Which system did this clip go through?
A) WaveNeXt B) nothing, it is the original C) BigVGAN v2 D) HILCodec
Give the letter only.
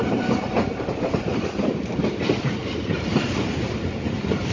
C